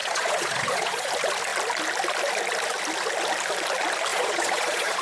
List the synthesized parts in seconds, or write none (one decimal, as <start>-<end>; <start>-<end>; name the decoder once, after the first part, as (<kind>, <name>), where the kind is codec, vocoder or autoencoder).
0.0-1.1 (vocoder, Vocos); 4.1-5.0